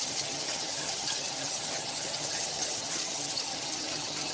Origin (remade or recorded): remade